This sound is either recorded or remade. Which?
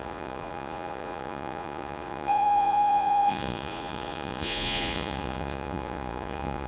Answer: remade